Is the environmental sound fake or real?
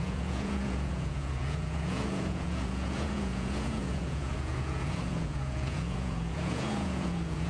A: fake